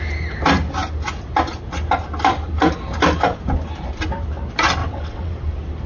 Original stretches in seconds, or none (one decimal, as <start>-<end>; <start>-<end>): 0.0-4.8; 5.3-5.9

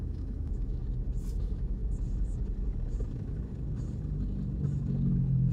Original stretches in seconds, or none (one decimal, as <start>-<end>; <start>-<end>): 0.8-1.4; 1.8-5.1

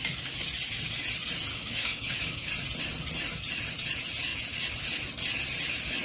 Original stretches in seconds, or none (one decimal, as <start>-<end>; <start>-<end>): 0.0-1.5; 2.5-6.0

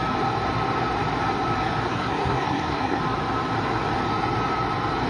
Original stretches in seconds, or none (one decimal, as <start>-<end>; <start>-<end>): 0.0-1.9; 3.0-5.1